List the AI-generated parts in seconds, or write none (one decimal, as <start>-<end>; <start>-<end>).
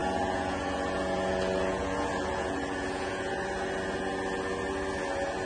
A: 0.0-3.3